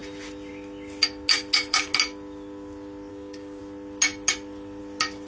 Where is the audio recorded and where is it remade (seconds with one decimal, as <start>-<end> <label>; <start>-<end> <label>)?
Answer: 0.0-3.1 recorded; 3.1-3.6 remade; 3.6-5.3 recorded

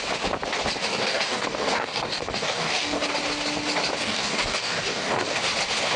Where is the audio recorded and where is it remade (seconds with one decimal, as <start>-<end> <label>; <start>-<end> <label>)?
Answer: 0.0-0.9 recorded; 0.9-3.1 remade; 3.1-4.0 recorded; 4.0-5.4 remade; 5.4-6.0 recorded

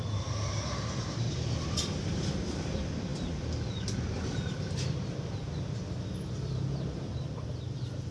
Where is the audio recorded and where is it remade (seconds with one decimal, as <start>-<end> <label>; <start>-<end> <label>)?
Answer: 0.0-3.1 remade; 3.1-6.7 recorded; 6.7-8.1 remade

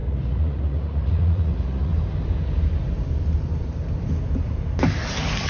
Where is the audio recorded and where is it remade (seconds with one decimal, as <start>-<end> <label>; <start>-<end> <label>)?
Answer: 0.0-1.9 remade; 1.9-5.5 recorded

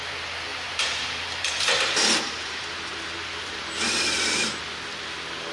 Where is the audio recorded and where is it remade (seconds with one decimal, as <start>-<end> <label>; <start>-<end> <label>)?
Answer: 0.0-0.5 recorded; 0.5-3.8 remade; 3.8-5.5 recorded